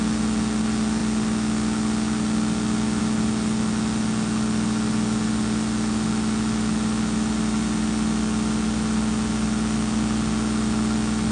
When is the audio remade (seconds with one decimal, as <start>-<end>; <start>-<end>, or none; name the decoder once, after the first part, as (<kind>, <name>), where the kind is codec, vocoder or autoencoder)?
none